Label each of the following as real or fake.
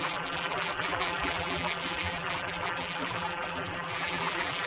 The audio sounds fake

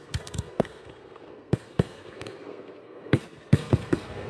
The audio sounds fake